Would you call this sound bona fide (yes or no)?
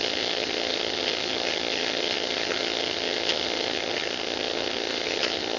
no